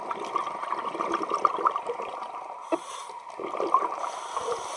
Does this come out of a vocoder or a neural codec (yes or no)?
no